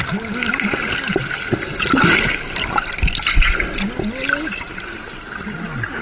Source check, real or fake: real